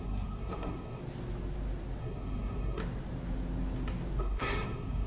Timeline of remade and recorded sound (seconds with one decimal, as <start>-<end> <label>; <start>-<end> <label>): 0.0-1.0 remade; 1.0-2.0 recorded; 2.0-2.8 remade; 2.8-4.2 recorded; 4.2-5.1 remade